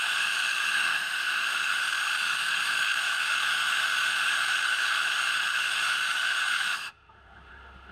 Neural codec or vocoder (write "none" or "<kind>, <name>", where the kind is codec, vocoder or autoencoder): autoencoder, DAC-VAE